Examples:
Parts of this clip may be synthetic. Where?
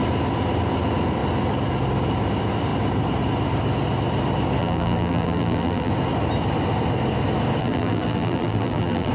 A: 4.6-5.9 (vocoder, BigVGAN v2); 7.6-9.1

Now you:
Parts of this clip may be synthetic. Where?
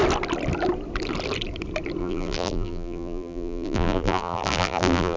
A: 2.0-5.2 (vocoder, BigVGAN v2)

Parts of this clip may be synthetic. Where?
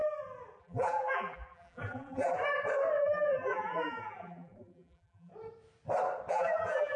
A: 0.6-2.4 (vocoder, BigVGAN v2); 3.0-5.3; 6.3-7.0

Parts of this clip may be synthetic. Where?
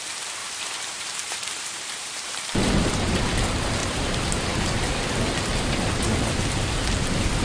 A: 0.4-2.9 (vocoder, BigVGAN v2); 3.8-4.6; 5.5-6.8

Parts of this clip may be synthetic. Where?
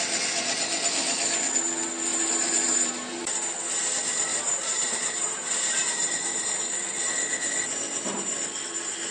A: 2.1-3.3 (vocoder, BigVGAN v2); 4.3-6.5